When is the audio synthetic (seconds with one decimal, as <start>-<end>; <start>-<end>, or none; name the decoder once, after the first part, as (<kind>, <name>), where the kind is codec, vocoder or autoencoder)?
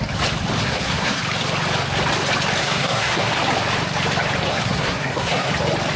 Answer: 0.6-1.2 (codec, SNAC); 2.6-3.3; 4.5-5.5